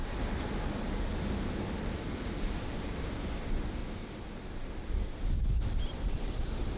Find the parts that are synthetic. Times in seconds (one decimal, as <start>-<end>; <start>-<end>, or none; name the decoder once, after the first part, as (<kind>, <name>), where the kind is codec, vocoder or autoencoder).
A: 1.9-3.8 (vocoder, BigVGAN v2); 5.6-6.8